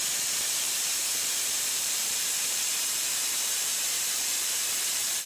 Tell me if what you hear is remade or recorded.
remade